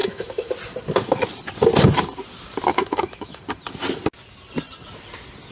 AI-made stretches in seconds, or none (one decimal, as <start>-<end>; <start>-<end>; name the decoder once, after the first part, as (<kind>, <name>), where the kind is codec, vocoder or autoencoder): 0.0-0.5 (autoencoder, DAC-VAE); 2.7-3.4